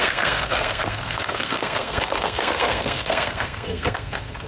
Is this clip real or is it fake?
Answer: fake